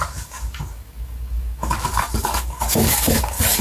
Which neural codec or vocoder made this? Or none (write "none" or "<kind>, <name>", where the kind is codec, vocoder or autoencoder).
codec, DAC